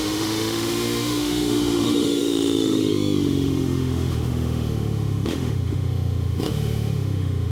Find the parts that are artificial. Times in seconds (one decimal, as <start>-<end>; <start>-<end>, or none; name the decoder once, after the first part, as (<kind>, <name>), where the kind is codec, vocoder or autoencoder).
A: 0.0-7.5 (autoencoder, DAC-VAE)